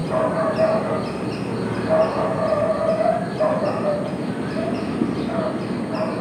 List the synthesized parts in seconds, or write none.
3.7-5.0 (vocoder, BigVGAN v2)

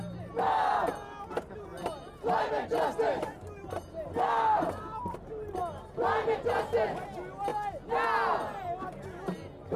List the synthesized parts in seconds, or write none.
none

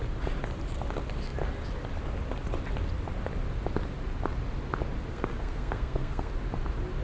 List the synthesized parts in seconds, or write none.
5.1-6.3 (codec, SNAC)

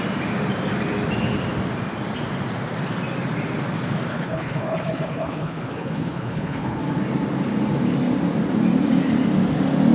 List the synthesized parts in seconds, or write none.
4.1-6.8 (codec, HILCodec)